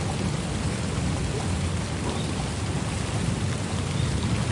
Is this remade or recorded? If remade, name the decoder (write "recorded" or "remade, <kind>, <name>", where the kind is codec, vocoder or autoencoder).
recorded